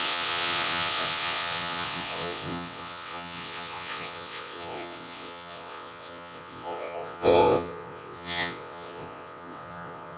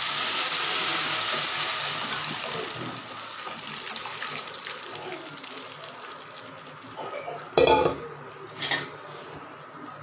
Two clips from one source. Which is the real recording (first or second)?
second